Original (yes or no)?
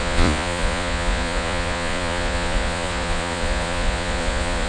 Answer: no